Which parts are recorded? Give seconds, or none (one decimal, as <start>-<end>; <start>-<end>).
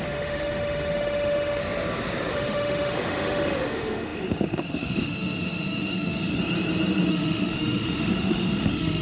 1.6-2.3; 6.3-7.1